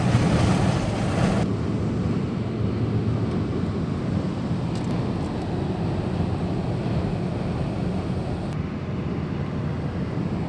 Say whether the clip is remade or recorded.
recorded